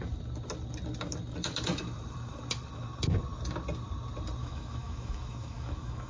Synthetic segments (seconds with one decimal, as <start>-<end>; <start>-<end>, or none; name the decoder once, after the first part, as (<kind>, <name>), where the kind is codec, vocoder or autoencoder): 4.4-6.1 (autoencoder, DAC-VAE)